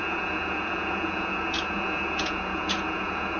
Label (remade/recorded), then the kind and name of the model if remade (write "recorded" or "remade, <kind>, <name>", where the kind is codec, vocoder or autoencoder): remade, vocoder, Vocos